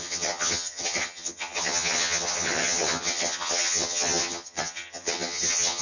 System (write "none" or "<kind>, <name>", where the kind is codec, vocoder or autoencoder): vocoder, HiFi-GAN